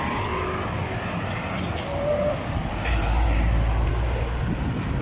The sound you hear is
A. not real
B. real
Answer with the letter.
B